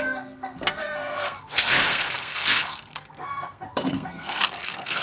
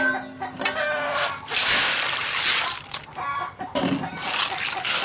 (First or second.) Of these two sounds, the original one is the second